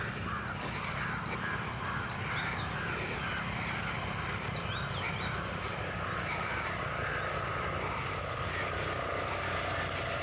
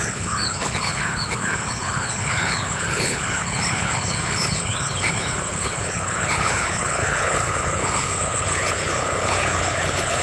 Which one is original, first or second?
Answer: first